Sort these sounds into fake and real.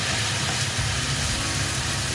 real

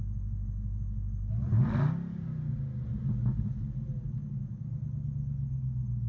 real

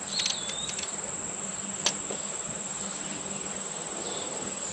real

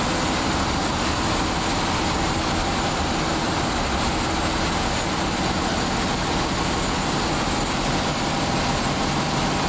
real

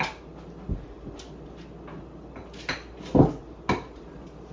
real